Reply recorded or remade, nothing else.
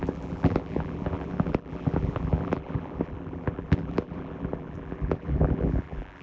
remade